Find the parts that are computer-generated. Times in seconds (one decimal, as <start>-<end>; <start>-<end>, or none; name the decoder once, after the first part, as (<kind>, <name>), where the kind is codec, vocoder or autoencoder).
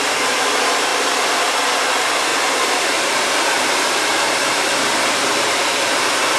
2.3-5.9 (vocoder, BigVGAN v2)